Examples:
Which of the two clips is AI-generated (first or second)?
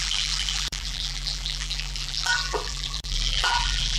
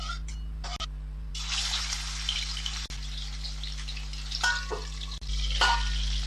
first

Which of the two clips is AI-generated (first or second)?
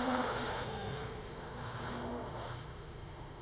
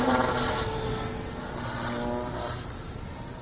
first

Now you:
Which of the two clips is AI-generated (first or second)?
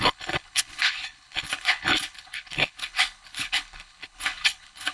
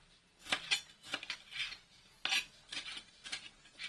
first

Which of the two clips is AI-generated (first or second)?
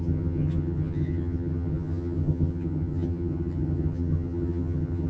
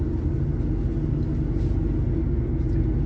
first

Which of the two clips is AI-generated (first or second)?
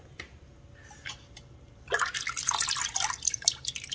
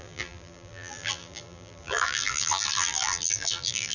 second